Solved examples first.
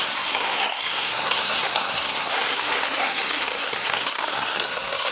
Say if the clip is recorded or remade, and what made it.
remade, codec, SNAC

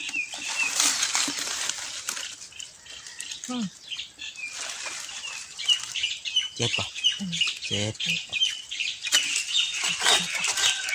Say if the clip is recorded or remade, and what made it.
recorded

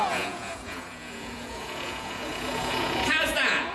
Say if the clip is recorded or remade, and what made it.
remade, vocoder, Vocos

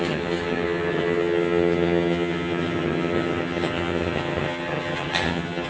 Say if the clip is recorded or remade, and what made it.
remade, vocoder, HiFi-GAN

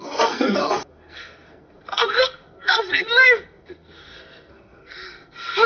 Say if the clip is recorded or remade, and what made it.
remade, codec, SNAC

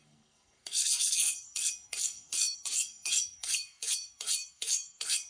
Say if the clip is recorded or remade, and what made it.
remade, codec, SNAC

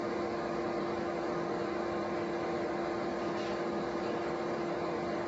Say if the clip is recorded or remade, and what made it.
recorded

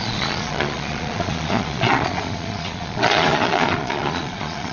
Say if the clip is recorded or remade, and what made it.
remade, vocoder, Vocos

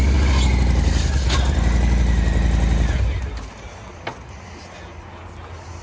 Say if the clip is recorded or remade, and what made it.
recorded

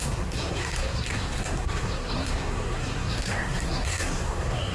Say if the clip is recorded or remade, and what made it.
remade, codec, SNAC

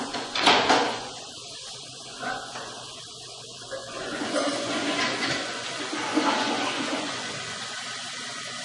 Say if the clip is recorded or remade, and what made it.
remade, vocoder, Vocos